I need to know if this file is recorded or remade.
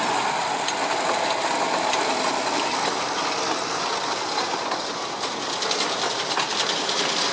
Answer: recorded